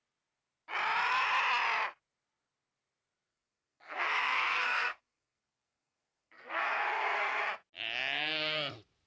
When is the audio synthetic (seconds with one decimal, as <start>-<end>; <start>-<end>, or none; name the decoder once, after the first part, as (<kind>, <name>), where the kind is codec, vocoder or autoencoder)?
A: 3.3-7.4 (codec, SNAC)